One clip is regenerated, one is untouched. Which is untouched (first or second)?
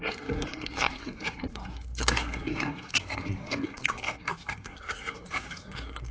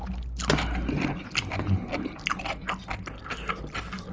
second